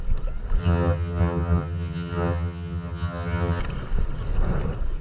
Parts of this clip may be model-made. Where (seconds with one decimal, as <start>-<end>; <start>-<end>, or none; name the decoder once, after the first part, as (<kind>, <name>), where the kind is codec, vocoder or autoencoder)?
0.6-3.6 (vocoder, HiFi-GAN)